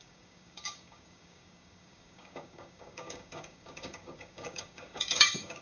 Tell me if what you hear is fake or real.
fake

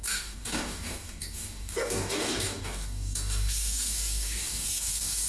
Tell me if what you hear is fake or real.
fake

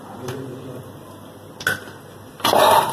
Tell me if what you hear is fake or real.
real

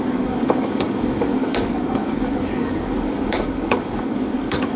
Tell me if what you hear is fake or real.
fake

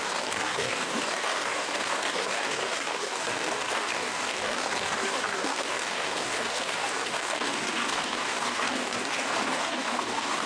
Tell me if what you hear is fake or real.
fake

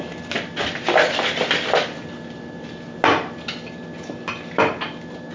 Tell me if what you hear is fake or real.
real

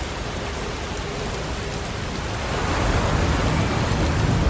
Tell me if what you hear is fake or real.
real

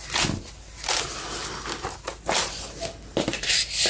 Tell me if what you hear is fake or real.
real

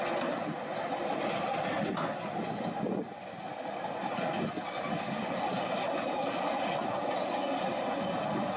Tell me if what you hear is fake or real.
real